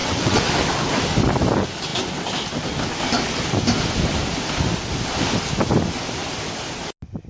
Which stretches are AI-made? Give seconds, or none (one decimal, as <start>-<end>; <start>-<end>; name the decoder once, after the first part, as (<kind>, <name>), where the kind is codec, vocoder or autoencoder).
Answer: 0.0-0.5 (vocoder, WaveNeXt)